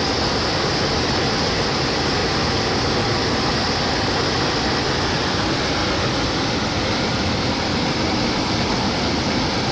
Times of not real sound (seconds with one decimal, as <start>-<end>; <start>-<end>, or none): none